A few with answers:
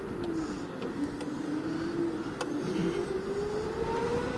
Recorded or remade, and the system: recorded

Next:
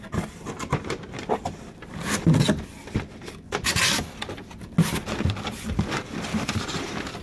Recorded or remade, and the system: remade, vocoder, BigVGAN v2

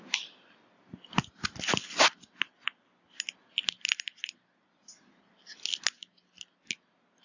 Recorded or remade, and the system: recorded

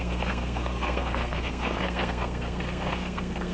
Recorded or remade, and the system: remade, codec, SNAC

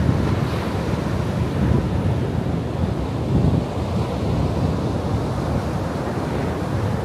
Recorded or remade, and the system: recorded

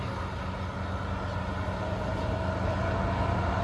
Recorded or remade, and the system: recorded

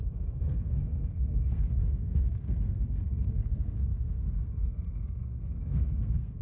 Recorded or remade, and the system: remade, codec, SNAC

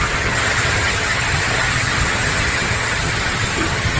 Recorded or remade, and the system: remade, vocoder, HiFi-GAN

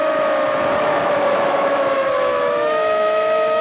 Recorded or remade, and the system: remade, autoencoder, DAC-VAE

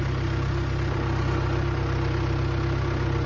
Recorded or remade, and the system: recorded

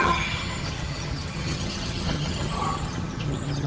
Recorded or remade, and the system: remade, vocoder, HiFi-GAN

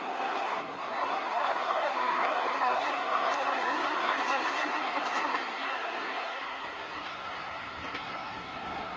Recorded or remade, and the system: remade, codec, SNAC